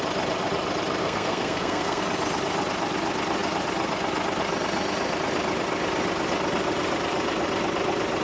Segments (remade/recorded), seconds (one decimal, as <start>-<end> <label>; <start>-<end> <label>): 0.0-1.0 recorded; 1.0-2.0 remade; 2.0-8.2 recorded